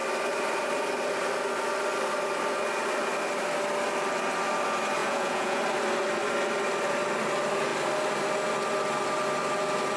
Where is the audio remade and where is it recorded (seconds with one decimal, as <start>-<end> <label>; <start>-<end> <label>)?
0.0-5.0 recorded; 5.0-5.6 remade; 5.6-10.0 recorded